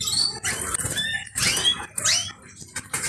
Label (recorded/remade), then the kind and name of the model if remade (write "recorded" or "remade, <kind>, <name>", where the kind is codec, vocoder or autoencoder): recorded